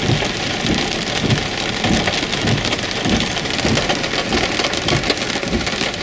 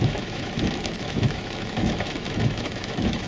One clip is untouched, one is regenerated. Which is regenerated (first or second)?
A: second